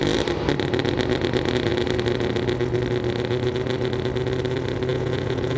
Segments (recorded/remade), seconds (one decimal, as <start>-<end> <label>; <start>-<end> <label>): 0.0-4.9 recorded; 4.9-5.6 remade